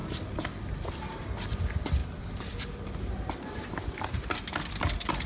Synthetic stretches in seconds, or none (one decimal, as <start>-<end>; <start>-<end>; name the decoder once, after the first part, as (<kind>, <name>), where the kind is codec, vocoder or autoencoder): 2.0-3.9 (vocoder, BigVGAN v2)